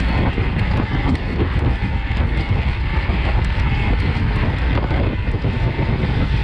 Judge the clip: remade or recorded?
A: remade